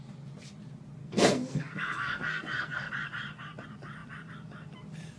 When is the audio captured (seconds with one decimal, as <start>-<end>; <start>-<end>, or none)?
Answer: 0.0-1.0; 2.9-5.2